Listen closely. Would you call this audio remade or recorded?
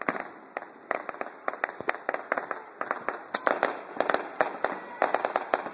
recorded